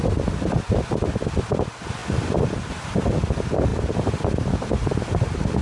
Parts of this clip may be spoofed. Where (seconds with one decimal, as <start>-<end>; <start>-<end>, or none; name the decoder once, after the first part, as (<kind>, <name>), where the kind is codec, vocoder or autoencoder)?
3.7-4.3 (vocoder, BigVGAN v2)